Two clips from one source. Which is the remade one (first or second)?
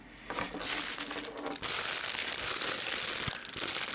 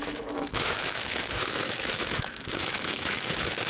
second